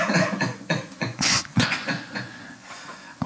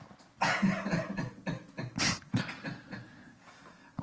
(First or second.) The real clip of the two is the second